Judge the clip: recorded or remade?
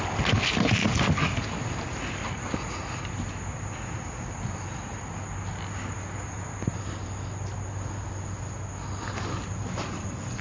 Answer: recorded